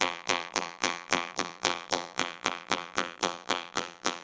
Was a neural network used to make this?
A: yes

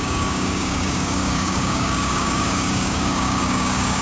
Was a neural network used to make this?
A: yes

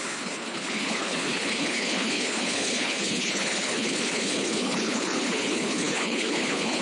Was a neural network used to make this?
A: yes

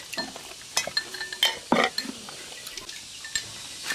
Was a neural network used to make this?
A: no